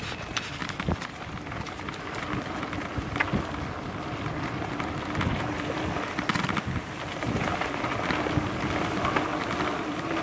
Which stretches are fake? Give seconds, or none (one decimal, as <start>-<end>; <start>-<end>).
none